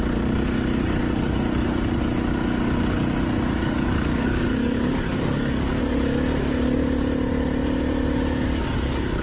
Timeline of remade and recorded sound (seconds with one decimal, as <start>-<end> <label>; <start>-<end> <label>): 0.0-3.6 recorded; 3.6-5.8 remade; 5.8-9.2 recorded